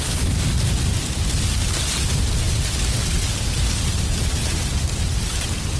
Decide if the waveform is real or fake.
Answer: real